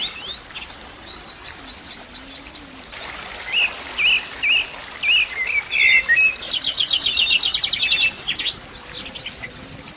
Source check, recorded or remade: recorded